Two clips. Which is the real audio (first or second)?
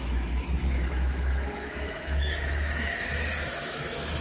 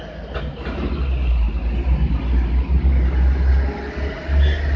second